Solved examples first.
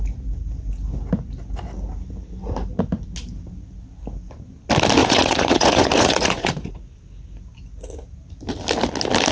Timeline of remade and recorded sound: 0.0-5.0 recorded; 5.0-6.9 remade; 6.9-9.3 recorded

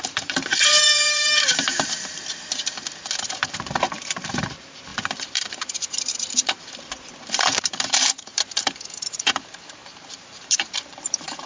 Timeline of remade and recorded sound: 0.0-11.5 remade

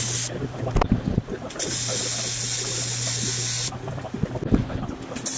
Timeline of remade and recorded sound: 0.0-1.1 recorded; 1.1-1.6 remade; 1.6-5.4 recorded